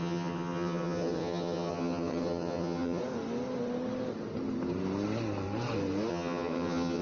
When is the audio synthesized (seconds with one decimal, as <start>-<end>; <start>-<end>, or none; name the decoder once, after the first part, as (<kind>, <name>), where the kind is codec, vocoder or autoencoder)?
0.0-3.0 (vocoder, HiFi-GAN); 6.1-7.0